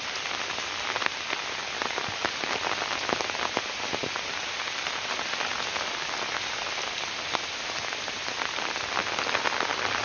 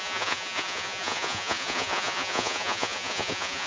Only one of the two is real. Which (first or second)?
first